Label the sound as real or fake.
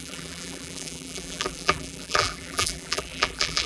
fake